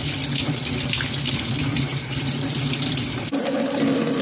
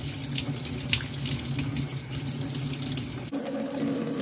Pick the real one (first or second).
second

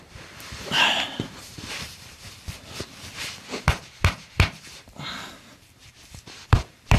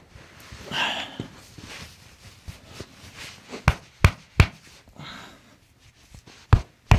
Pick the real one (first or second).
second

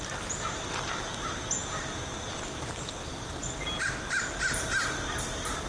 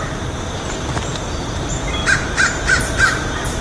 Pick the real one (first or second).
first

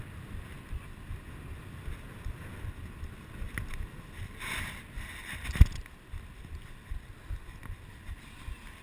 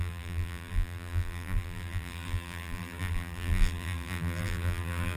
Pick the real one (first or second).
first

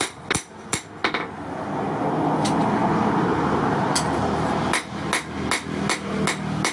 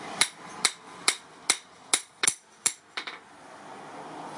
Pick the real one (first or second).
first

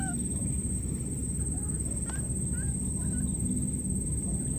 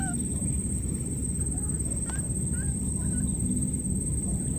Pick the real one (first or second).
first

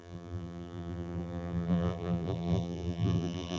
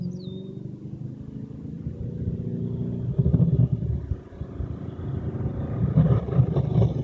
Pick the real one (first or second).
second